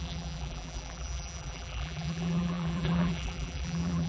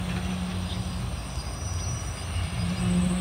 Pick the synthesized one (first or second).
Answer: first